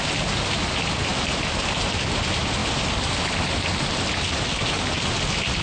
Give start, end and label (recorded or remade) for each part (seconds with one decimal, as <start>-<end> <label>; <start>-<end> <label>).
0.0-1.1 recorded; 1.1-2.2 remade; 2.2-5.6 recorded